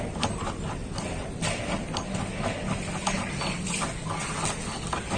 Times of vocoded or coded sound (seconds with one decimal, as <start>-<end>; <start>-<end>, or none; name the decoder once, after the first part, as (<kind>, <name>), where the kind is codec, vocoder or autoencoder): none